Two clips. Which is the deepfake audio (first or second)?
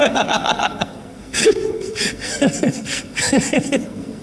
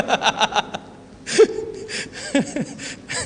first